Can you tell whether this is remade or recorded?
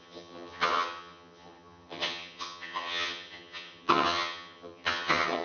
remade